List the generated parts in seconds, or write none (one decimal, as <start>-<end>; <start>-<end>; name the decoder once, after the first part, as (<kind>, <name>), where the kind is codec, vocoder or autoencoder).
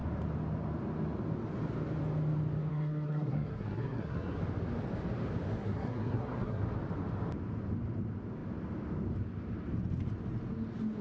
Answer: 2.7-4.4 (codec, SNAC); 5.6-6.6